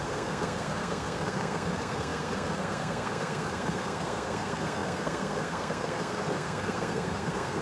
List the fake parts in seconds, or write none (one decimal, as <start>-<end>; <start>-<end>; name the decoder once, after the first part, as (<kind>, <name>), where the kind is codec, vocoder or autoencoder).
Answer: 0.0-7.6 (codec, SNAC)